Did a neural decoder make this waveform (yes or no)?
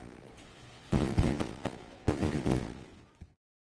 yes